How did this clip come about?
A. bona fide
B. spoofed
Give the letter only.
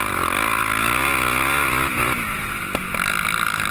A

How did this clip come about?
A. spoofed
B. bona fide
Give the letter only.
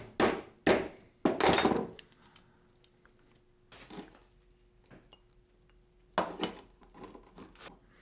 B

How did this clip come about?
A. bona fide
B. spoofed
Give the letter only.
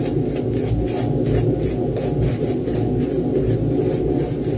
A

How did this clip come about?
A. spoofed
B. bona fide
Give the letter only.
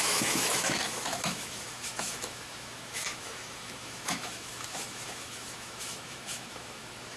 A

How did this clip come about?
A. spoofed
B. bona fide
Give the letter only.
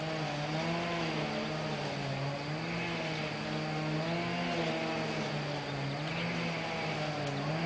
B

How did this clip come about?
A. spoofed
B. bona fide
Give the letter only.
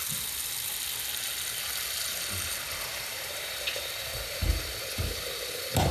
B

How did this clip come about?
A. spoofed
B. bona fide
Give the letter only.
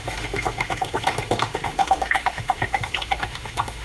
A